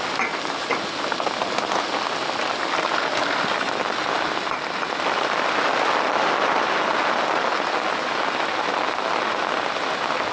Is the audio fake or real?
real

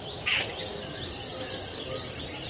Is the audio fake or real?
fake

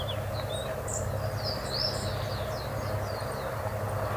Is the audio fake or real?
real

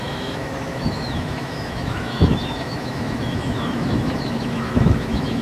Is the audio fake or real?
fake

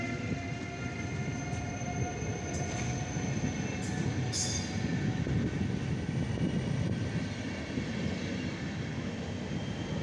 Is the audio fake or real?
real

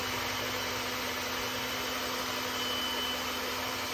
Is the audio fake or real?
real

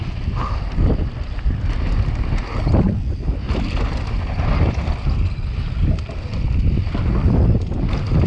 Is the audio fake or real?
real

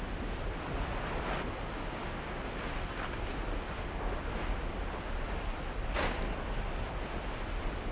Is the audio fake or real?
real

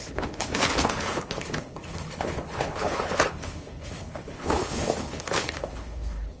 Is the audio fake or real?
fake